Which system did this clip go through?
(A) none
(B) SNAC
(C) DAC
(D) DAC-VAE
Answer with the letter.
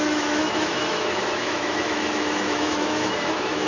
D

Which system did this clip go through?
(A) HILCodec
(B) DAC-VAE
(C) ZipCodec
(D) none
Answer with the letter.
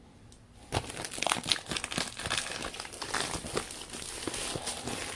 D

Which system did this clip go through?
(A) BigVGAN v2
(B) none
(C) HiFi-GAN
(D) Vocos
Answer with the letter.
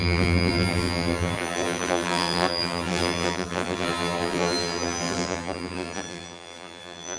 A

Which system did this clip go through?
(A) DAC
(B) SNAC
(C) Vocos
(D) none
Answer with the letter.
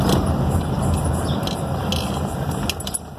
D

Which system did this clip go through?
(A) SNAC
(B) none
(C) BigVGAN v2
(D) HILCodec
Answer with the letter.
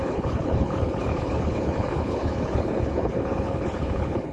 D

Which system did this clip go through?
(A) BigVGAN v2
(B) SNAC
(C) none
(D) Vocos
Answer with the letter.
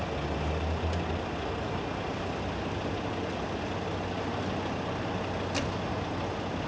C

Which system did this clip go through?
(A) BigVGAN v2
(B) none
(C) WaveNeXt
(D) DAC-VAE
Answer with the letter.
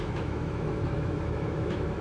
D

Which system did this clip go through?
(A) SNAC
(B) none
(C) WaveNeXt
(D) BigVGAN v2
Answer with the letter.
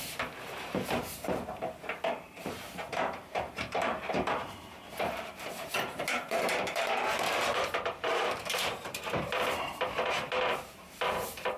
D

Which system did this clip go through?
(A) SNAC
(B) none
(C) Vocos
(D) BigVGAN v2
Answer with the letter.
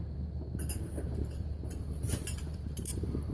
D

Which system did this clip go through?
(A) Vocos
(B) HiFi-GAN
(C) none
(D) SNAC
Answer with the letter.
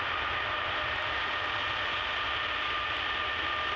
C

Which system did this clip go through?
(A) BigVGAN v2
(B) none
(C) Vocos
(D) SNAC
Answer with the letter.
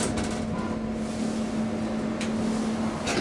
B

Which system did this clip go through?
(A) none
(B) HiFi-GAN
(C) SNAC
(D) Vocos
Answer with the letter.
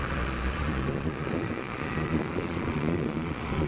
D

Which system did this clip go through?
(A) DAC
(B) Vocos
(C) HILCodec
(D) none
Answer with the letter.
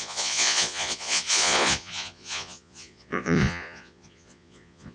B